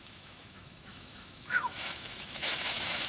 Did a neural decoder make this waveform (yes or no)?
yes